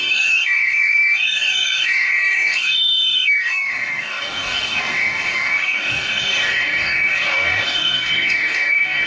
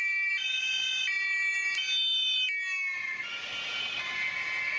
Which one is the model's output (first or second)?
first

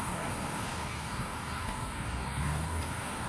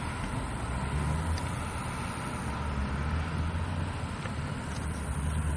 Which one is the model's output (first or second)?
first